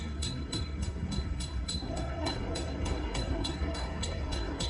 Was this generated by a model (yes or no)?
yes